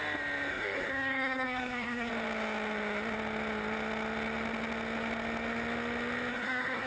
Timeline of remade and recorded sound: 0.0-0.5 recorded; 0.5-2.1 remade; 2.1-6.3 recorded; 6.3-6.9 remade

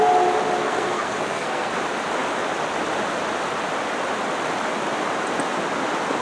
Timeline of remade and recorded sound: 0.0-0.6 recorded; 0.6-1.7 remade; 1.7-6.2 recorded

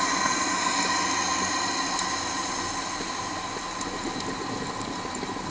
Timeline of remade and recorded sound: 0.0-5.5 recorded

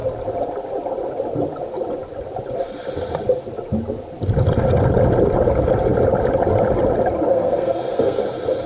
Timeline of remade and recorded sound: 0.0-7.3 recorded; 7.3-8.2 remade; 8.2-8.7 recorded

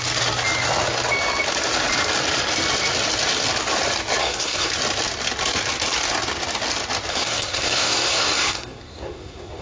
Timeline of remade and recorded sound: 0.0-4.2 recorded; 4.2-4.7 remade; 4.7-7.1 recorded; 7.1-9.6 remade